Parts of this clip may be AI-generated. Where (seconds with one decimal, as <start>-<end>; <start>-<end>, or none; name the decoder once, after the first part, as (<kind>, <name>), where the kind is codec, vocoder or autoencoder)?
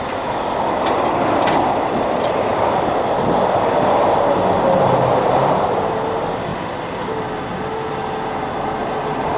none